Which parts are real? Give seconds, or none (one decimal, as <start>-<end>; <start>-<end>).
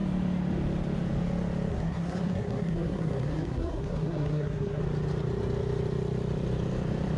0.0-1.7; 4.8-7.2